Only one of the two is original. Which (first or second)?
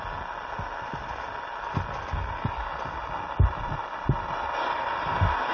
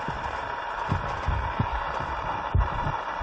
first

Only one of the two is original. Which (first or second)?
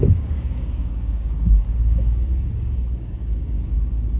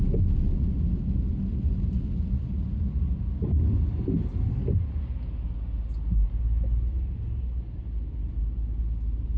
second